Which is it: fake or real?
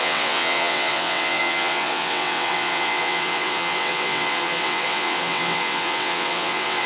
fake